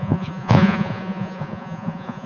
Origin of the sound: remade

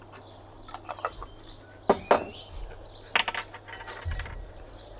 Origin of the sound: recorded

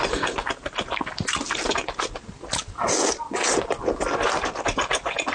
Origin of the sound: recorded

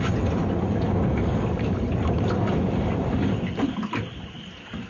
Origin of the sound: recorded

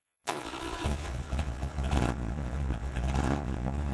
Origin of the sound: remade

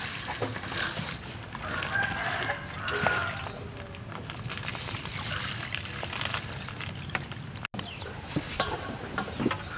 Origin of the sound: recorded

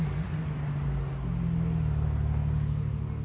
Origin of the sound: recorded